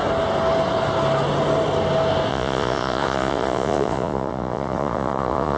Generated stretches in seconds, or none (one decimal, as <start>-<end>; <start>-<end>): 2.3-5.6